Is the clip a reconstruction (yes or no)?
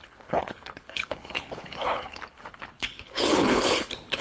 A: yes